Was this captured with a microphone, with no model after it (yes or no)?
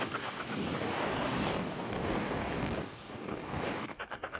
no